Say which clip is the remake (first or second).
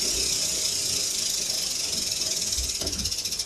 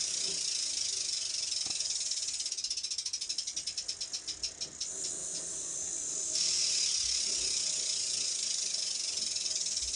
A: first